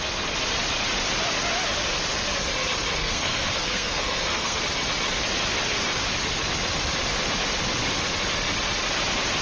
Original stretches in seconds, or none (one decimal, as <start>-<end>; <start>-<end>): 0.0-2.9; 4.6-9.4